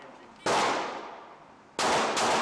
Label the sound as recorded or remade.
recorded